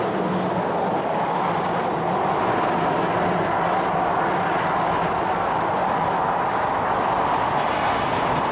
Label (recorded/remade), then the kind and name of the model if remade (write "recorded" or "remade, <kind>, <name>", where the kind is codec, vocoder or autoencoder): recorded